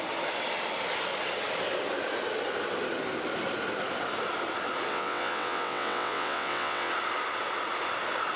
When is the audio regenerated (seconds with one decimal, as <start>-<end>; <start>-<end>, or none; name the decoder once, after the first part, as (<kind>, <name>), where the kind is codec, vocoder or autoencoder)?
4.9-6.9 (vocoder, WaveNeXt)